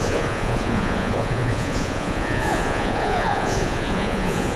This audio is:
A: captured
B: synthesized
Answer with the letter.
B